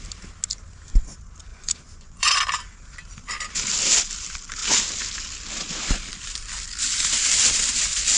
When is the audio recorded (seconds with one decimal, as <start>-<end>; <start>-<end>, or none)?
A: 0.0-1.5; 2.4-8.2